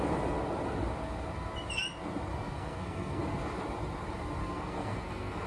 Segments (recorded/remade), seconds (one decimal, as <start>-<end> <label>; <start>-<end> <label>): 0.0-2.3 recorded; 2.3-3.2 remade; 3.2-4.4 recorded; 4.4-5.5 remade